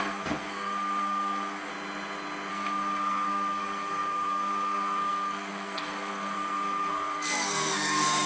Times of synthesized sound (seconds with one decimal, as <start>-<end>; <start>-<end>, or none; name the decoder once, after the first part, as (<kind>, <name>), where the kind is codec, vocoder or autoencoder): 0.0-1.7 (codec, SNAC); 2.5-8.3